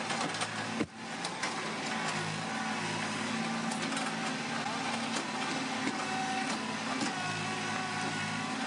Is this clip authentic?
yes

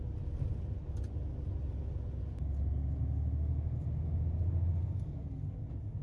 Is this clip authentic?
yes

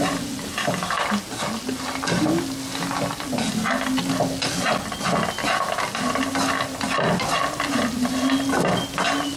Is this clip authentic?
yes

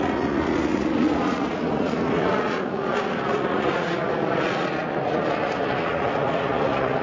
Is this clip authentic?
no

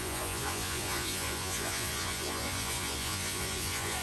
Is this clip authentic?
no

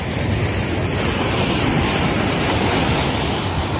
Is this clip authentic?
yes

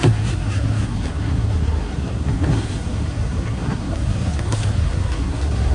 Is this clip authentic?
no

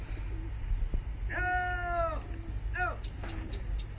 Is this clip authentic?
yes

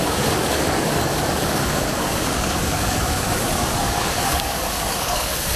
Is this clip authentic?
no